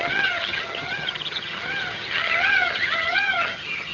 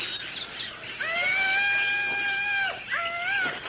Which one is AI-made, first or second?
first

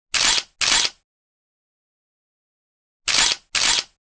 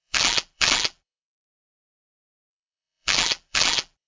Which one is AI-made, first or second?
second